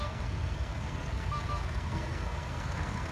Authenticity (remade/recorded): remade